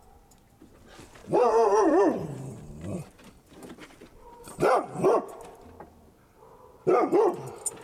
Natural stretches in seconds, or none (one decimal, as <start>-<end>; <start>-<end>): 0.0-1.2; 5.2-7.8